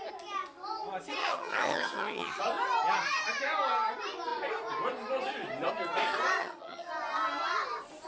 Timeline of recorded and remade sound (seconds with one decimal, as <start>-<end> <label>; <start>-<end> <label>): 0.0-1.2 recorded; 1.2-2.4 remade; 2.4-6.4 recorded; 6.4-6.9 remade; 6.9-8.1 recorded